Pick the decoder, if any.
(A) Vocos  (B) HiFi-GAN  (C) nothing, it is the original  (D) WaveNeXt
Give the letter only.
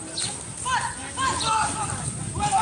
C